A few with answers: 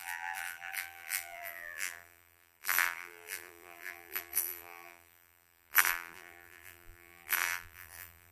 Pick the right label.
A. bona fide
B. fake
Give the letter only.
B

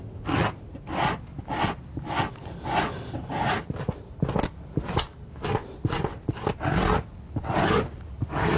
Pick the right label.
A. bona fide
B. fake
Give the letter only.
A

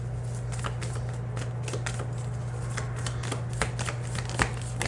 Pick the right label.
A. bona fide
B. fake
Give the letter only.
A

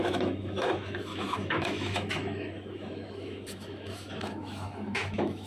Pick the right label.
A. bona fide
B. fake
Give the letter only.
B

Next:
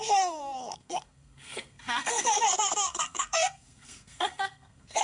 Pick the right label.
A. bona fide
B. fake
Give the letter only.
B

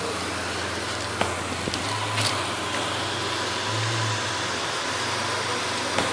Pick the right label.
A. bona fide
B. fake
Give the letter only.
A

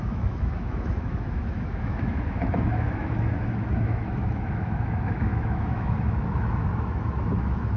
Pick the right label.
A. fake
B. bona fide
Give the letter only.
A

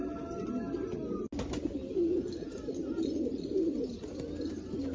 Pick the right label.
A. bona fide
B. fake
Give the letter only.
A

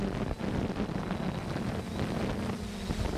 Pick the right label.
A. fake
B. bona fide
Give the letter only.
B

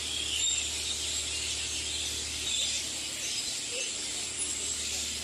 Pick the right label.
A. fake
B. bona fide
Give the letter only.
B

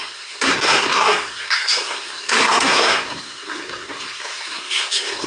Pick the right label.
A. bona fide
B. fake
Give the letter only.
B